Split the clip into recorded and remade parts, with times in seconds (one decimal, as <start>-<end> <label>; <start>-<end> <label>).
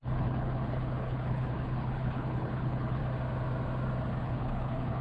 0.0-3.0 remade; 3.0-4.2 recorded; 4.2-5.0 remade